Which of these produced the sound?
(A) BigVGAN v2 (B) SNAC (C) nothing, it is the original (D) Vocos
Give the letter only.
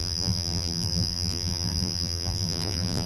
A